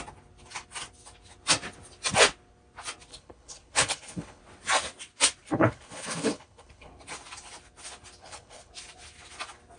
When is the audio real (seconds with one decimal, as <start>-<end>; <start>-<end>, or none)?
0.0-3.1; 4.4-5.4; 6.9-8.2; 8.7-9.8